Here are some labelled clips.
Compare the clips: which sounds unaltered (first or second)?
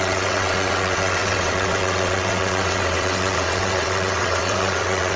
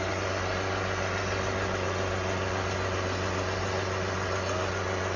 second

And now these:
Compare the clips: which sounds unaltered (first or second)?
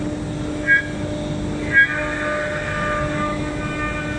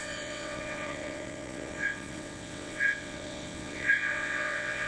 first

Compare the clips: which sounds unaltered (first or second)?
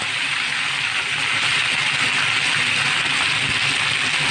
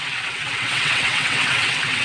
first